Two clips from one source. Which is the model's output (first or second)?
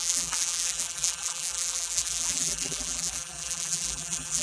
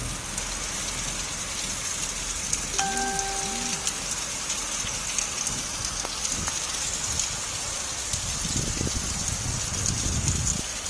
first